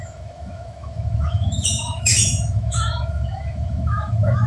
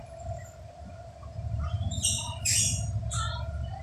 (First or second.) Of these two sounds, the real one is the second